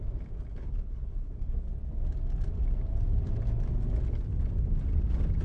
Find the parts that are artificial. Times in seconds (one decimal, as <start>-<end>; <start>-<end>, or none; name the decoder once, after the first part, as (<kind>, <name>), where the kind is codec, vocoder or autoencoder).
0.5-1.3 (codec, HILCodec)